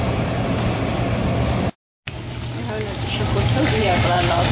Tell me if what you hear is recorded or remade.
recorded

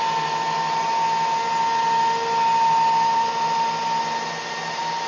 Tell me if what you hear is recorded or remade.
recorded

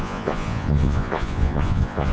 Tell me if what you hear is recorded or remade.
remade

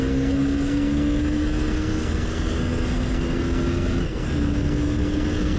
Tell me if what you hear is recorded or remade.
remade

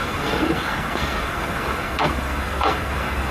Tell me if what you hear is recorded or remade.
remade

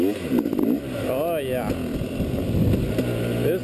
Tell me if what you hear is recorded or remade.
recorded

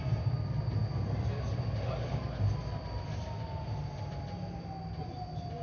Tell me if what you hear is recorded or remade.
recorded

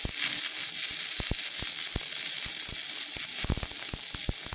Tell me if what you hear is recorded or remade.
recorded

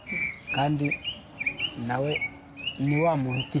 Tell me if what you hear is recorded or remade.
recorded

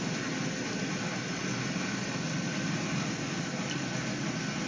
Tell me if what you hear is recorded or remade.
recorded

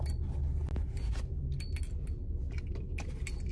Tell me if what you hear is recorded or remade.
recorded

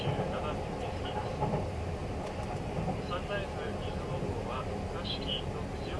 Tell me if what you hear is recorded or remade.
recorded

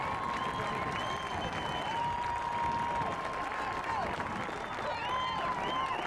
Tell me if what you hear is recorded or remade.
recorded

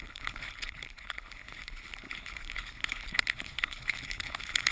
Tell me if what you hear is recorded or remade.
remade